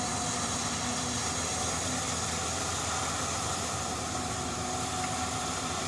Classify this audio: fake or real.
fake